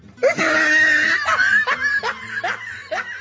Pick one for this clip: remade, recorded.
recorded